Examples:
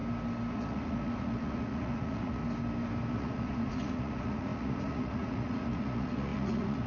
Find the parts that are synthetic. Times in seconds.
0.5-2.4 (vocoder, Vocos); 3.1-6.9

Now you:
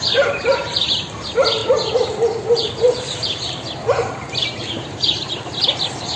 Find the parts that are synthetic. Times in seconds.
none

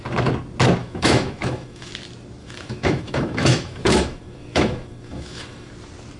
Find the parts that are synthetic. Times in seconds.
0.8-1.9 (autoencoder, DAC-VAE); 2.4-5.7

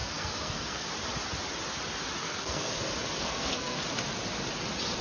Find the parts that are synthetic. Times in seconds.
0.0-0.9 (codec, SNAC); 2.2-2.8; 3.2-3.8

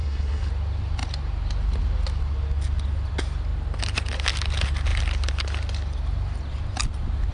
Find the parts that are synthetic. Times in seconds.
0.0-0.5 (codec, SNAC)

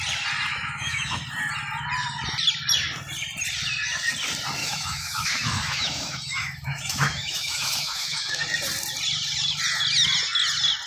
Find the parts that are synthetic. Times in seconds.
0.5-1.2 (autoencoder, DAC-VAE); 4.6-8.4

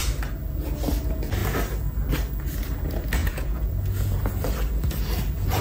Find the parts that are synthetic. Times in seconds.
3.2-4.2 (vocoder, Vocos)

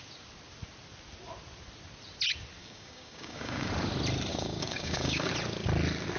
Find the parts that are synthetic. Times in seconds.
2.6-3.7 (codec, DAC); 4.3-5.3